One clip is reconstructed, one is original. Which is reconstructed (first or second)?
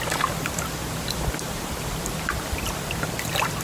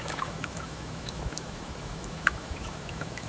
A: second